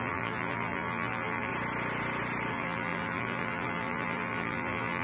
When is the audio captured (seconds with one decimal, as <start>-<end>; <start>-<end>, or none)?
1.5-2.5

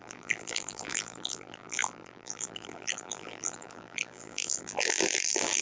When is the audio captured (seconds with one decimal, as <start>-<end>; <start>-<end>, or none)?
none